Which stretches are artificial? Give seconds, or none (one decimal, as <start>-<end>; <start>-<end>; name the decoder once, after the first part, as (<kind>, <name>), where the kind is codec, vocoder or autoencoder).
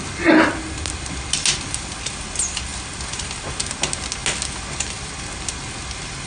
none